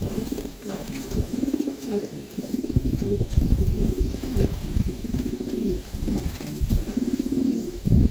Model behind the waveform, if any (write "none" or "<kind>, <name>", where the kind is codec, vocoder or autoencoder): codec, DAC